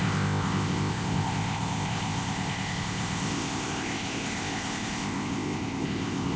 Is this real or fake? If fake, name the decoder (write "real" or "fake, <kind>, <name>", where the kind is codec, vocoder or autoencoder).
fake, codec, ZipCodec